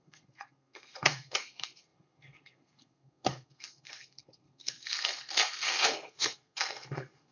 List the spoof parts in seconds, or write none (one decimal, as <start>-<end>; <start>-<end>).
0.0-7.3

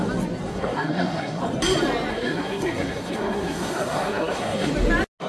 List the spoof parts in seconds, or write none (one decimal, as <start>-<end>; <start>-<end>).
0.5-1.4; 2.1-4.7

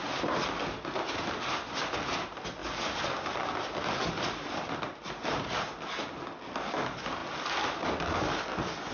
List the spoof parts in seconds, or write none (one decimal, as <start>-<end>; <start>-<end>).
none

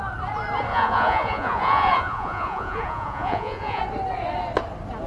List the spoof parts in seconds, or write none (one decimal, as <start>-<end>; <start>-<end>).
0.7-3.8

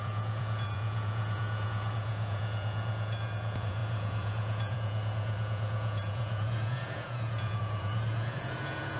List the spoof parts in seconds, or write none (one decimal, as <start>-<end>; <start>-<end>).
0.0-9.0

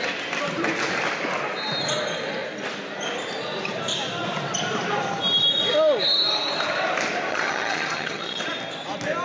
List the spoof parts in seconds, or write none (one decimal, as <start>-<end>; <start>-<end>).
7.3-8.4